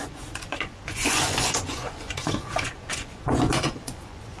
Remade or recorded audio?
remade